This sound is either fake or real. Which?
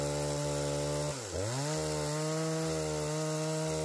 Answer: real